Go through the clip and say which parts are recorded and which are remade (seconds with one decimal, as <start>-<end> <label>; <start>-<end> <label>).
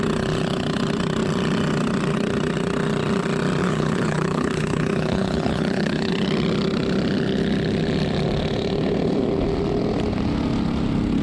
0.0-3.6 recorded; 3.6-6.1 remade; 6.1-11.2 recorded